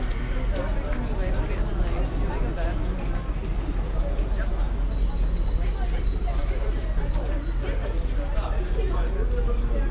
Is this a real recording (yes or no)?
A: yes